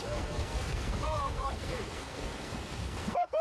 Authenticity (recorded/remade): remade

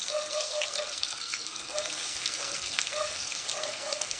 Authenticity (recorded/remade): remade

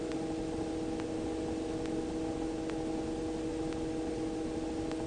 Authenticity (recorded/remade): recorded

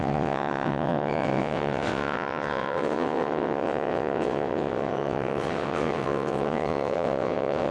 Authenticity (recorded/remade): remade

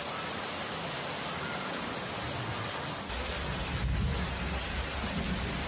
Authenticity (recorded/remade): recorded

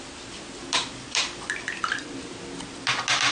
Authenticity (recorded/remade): recorded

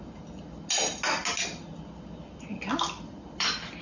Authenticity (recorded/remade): recorded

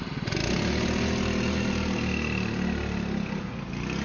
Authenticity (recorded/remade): recorded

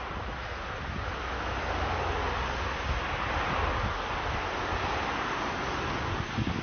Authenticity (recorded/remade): recorded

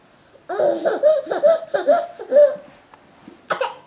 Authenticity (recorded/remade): recorded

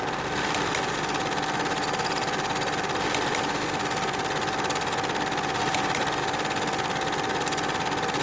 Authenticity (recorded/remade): recorded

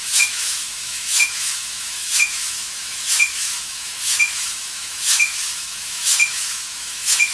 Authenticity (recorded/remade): remade